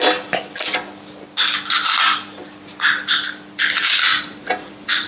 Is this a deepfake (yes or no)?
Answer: no